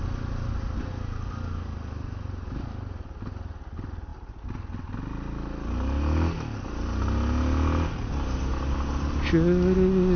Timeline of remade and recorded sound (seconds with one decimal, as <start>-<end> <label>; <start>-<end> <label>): 0.0-10.2 recorded